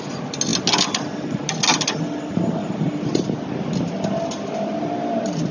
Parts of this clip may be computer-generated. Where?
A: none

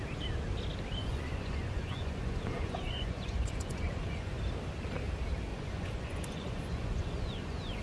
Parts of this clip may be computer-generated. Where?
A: 1.0-4.4 (vocoder, Vocos); 5.5-7.8

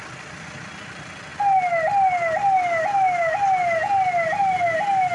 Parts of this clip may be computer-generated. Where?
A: none

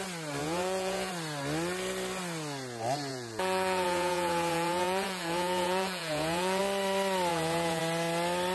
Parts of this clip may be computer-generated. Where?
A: 0.4-1.1 (vocoder, Vocos); 3.1-6.6; 7.3-7.8

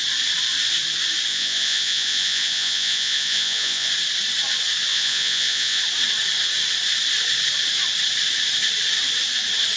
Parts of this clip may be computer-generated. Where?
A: 1.3-3.9 (vocoder, Vocos); 4.9-5.8

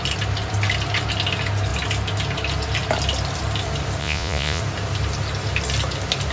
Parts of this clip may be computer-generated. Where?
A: 4.0-4.6 (vocoder, Vocos)